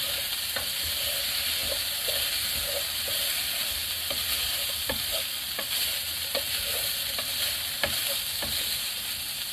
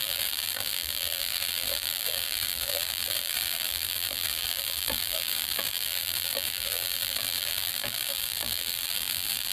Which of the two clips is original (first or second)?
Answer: first